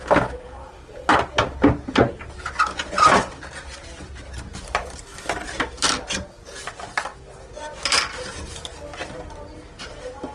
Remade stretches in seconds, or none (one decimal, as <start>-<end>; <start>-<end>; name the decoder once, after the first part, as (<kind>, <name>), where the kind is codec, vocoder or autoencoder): none